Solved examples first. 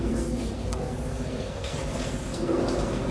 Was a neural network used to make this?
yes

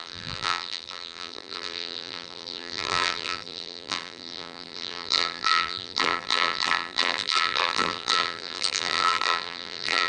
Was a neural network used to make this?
yes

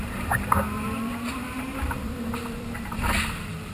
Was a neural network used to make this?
yes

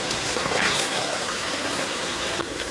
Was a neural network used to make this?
yes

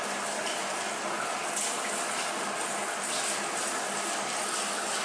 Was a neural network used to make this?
no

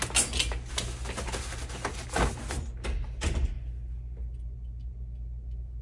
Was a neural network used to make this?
no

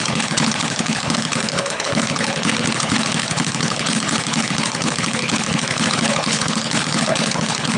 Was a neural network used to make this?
yes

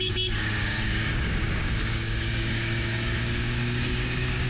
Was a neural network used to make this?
yes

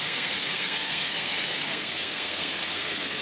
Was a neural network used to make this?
yes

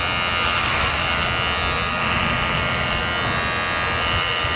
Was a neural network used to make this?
no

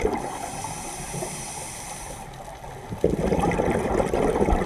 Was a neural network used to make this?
no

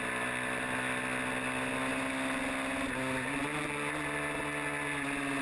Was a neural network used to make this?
no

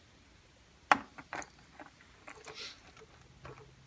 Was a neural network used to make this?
no